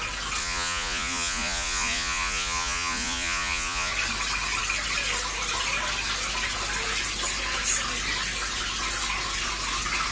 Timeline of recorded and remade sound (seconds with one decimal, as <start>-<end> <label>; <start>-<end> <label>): 0.0-0.4 recorded; 0.4-3.9 remade; 3.9-10.1 recorded